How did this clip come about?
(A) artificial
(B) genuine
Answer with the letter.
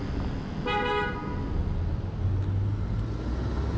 B